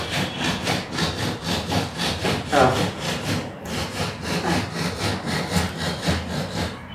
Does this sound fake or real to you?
real